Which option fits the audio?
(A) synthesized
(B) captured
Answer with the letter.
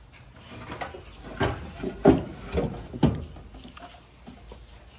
B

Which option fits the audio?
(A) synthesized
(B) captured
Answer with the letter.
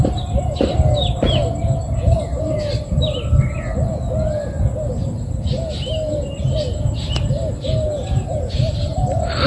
B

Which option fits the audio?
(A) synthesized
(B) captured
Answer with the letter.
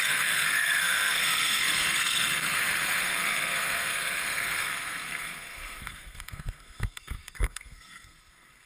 A